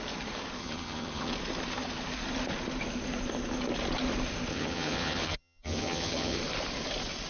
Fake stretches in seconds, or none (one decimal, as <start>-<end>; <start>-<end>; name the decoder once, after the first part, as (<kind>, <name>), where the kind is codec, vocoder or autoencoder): 0.6-1.3 (vocoder, HiFi-GAN); 4.5-6.4